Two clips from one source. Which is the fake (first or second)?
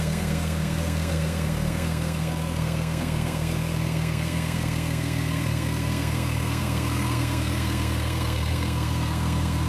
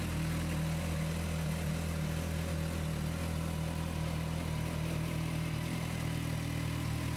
first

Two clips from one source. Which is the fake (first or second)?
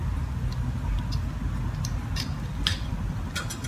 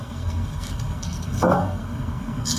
second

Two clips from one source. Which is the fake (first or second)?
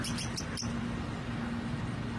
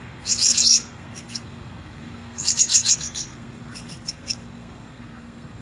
second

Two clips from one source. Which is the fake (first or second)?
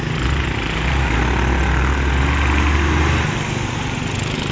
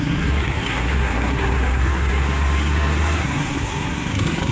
second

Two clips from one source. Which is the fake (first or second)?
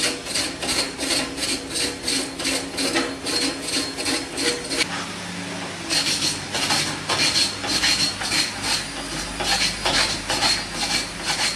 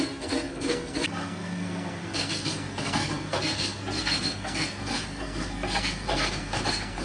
second